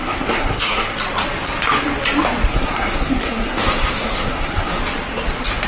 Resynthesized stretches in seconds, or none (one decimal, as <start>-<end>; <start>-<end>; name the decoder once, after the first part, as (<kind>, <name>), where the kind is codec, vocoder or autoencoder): 0.0-1.0 (codec, SNAC); 2.5-4.8